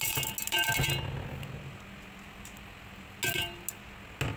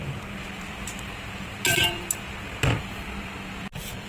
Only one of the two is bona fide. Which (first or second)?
first